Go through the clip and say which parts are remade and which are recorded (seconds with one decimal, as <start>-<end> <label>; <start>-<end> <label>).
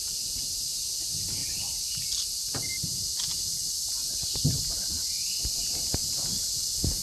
0.0-1.4 remade; 1.4-5.4 recorded; 5.4-6.0 remade; 6.0-6.6 recorded; 6.6-7.0 remade